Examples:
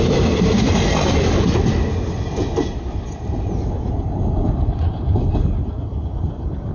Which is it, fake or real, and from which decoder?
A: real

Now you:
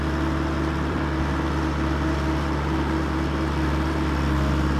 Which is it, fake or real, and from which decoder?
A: fake, vocoder, BigVGAN v2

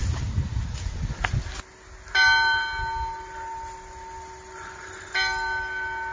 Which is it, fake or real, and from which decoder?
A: real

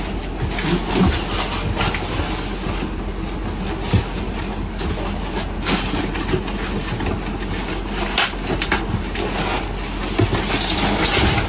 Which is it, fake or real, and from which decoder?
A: real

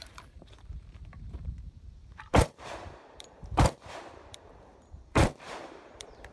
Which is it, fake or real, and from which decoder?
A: fake, vocoder, BigVGAN v2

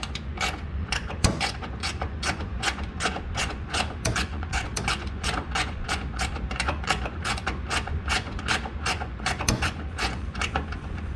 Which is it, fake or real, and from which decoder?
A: fake, vocoder, Vocos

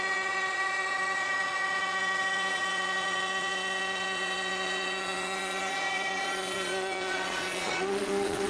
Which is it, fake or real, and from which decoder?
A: fake, vocoder, Vocos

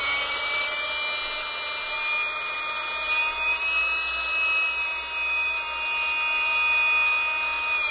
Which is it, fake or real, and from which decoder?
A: real